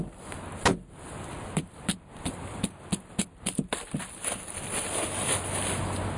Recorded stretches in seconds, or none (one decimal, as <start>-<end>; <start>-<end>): 0.0-6.2